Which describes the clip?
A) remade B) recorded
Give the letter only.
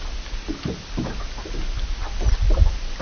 B